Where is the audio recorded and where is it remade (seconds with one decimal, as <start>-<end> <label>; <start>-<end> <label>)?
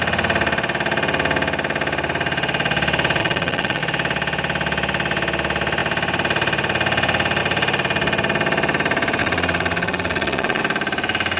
0.0-3.2 recorded; 3.2-3.8 remade; 3.8-9.2 recorded; 9.2-10.6 remade; 10.6-11.4 recorded